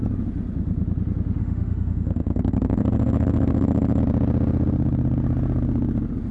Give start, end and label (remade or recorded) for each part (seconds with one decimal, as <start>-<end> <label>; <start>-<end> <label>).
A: 0.0-1.4 recorded; 1.4-4.0 remade; 4.0-6.3 recorded

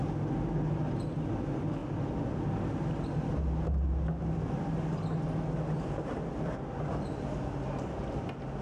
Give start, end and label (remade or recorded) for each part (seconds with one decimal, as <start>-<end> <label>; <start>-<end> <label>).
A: 0.0-8.6 recorded

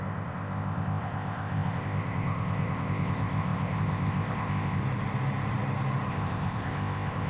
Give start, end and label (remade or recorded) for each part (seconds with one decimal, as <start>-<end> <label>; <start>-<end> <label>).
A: 0.0-4.8 remade; 4.8-6.1 recorded; 6.1-7.3 remade

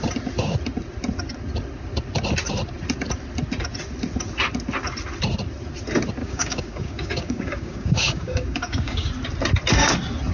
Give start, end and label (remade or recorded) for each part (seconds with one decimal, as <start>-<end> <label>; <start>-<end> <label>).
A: 0.0-6.2 recorded; 6.2-9.1 remade; 9.1-10.3 recorded

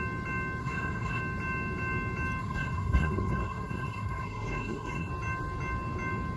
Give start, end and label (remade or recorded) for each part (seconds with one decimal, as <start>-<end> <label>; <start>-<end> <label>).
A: 0.0-0.6 recorded; 0.6-1.2 remade; 1.2-2.4 recorded; 2.4-5.1 remade; 5.1-6.4 recorded

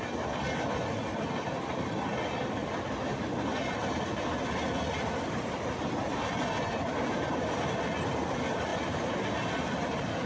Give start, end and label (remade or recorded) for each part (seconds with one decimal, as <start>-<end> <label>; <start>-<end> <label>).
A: 0.0-10.3 recorded

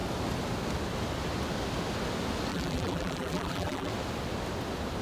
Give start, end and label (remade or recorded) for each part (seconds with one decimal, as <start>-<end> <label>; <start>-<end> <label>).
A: 0.0-2.5 recorded; 2.5-3.9 remade; 3.9-5.0 recorded